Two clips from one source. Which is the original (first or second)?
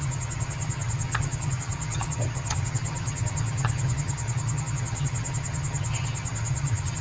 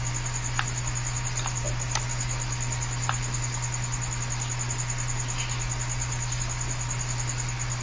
second